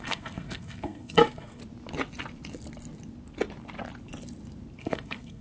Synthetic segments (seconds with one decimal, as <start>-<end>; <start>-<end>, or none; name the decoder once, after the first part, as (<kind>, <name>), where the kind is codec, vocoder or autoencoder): 0.0-1.6 (codec, SNAC); 4.8-5.4